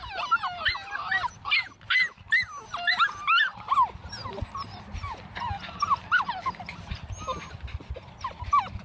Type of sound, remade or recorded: recorded